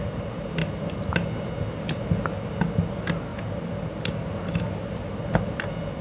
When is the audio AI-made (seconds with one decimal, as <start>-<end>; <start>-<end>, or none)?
none